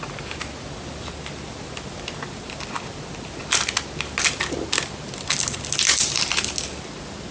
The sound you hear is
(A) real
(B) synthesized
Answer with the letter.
A